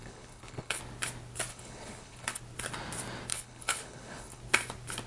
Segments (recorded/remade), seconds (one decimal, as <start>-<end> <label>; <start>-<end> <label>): 0.0-0.8 remade; 0.8-1.5 recorded; 1.5-2.4 remade; 2.4-3.3 recorded; 3.3-4.4 remade; 4.4-5.1 recorded